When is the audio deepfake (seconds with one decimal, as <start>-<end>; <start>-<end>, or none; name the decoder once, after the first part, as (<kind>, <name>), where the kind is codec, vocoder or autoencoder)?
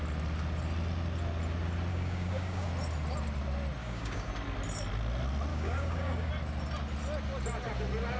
1.9-2.7 (codec, DAC); 3.8-4.3; 5.5-6.3